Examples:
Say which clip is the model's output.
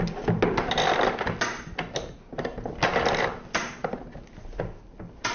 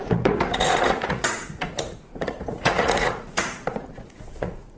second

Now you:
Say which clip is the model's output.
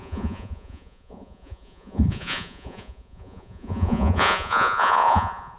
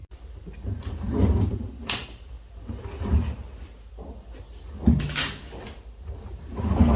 first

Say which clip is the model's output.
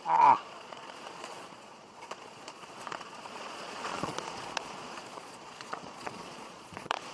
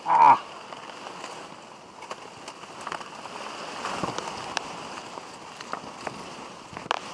first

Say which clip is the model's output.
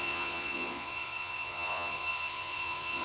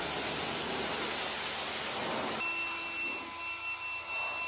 first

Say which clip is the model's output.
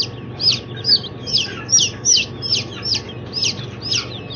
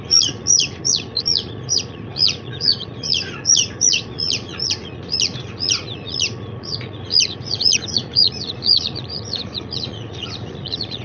second